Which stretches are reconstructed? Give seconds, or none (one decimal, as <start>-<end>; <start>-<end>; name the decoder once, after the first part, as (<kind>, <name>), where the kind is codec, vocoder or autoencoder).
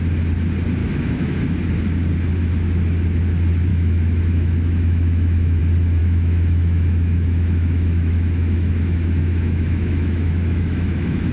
0.8-1.6 (autoencoder, DAC-VAE); 3.7-5.6; 6.0-11.3